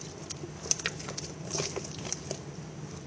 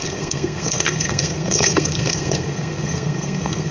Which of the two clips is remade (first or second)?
second